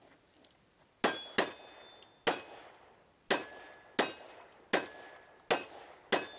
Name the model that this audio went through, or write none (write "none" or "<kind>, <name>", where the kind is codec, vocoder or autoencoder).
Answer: none